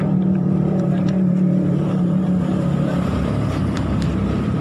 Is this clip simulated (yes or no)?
yes